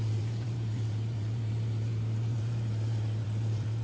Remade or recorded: remade